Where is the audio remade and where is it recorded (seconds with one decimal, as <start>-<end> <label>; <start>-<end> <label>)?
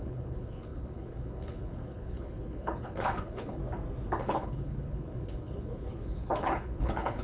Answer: 0.0-3.6 remade; 3.6-4.2 recorded; 4.2-7.2 remade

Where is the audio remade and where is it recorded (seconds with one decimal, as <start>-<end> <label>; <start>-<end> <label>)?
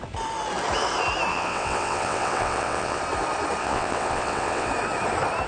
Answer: 0.0-1.3 recorded; 1.3-3.0 remade; 3.0-3.6 recorded; 3.6-4.7 remade; 4.7-5.5 recorded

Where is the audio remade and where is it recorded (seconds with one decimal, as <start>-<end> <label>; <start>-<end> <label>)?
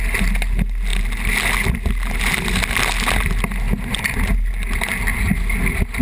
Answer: 0.0-6.0 recorded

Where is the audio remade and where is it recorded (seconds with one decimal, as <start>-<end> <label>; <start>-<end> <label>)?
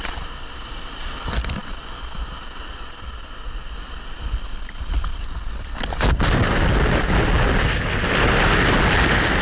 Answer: 0.0-9.4 recorded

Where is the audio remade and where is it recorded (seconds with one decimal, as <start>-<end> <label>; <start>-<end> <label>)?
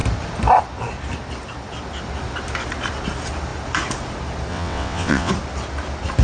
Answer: 0.0-4.5 recorded; 4.5-5.3 remade; 5.3-6.2 recorded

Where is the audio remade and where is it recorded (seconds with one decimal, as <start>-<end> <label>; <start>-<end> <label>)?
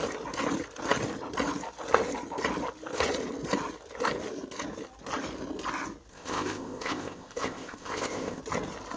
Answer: 0.0-6.1 recorded; 6.1-8.4 remade; 8.4-9.0 recorded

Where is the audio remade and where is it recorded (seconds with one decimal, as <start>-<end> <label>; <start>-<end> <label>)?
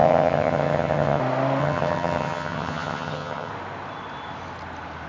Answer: 0.0-1.2 remade; 1.2-1.6 recorded; 1.6-3.5 remade; 3.5-5.1 recorded